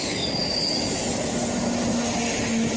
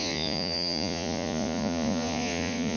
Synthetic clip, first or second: second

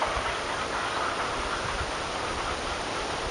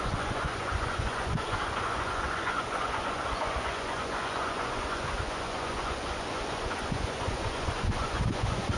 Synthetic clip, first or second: second